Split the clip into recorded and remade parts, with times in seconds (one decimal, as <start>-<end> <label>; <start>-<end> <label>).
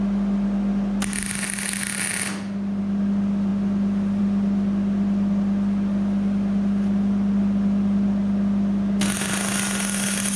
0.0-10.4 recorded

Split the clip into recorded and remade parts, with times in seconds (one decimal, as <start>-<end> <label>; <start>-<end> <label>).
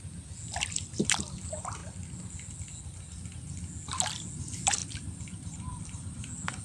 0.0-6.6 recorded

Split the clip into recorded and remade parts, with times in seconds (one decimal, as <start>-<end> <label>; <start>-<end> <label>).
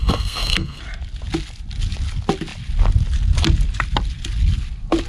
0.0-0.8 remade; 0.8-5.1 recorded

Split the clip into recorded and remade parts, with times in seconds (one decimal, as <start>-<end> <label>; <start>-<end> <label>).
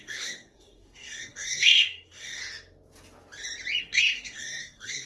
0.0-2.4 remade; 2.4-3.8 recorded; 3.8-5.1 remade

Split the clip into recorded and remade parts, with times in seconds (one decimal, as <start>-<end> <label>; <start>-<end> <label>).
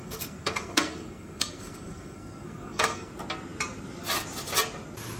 0.0-3.1 remade; 3.1-5.2 recorded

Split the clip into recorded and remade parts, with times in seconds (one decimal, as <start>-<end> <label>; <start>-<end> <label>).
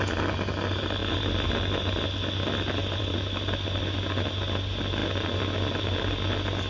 0.0-6.7 recorded